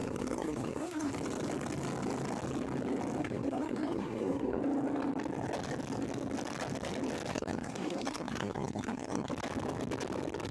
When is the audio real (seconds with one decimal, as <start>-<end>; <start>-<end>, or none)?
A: 1.1-3.2; 4.6-7.3; 9.3-10.5

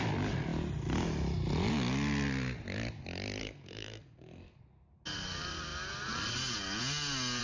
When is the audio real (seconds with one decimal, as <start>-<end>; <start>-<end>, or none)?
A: 0.0-3.4; 4.6-7.4